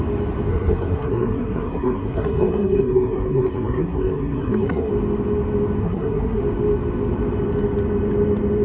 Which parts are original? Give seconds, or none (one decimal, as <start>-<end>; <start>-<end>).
0.0-0.5; 4.9-5.8; 6.4-8.6